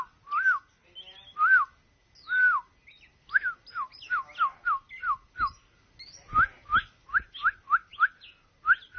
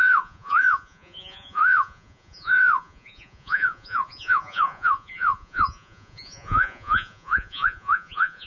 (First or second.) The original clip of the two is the first